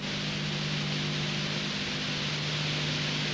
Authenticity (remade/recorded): recorded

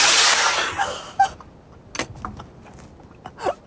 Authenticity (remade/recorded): recorded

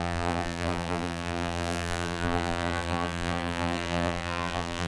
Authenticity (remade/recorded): remade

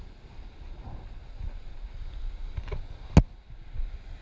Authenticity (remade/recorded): recorded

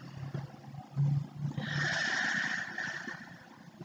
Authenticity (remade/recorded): recorded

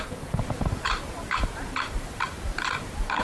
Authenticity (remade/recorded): remade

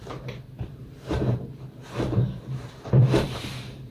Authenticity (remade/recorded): remade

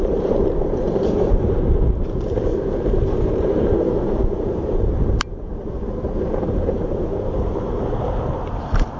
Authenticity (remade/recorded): remade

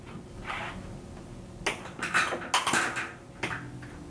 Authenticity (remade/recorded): recorded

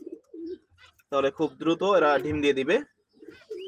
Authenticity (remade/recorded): recorded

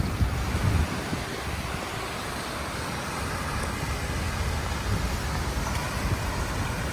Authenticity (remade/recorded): recorded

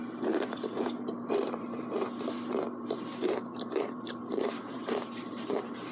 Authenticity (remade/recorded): remade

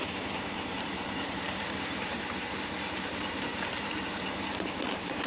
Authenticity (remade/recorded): remade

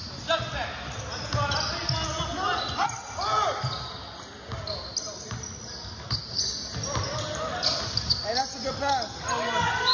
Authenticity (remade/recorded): recorded